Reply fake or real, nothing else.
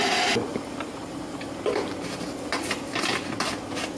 real